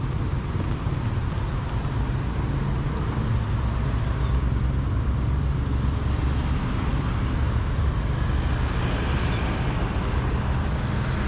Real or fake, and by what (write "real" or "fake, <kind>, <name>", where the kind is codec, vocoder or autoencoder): real